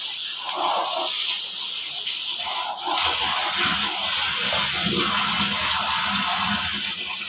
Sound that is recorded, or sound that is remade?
recorded